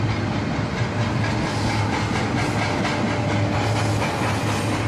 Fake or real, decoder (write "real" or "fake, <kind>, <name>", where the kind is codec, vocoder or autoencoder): real